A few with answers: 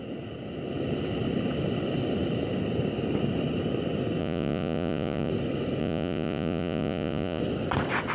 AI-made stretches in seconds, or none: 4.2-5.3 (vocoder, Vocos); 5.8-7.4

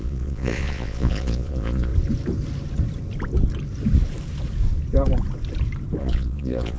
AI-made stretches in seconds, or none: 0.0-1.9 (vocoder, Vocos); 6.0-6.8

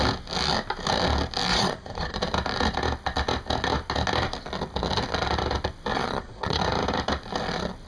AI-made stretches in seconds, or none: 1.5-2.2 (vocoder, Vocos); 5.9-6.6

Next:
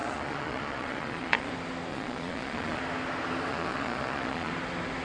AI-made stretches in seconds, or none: 0.0-1.5 (vocoder, Vocos); 1.9-2.8; 3.5-4.5

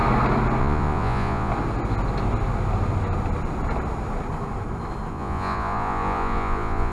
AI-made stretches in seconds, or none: 0.6-1.5 (vocoder, Vocos); 5.1-6.9

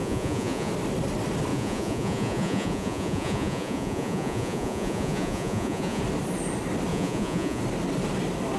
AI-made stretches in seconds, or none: 0.0-0.7 (vocoder, Vocos); 1.5-6.0; 6.9-7.6